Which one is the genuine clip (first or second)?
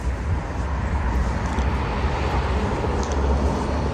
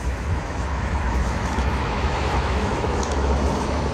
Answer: first